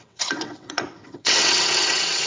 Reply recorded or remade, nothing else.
remade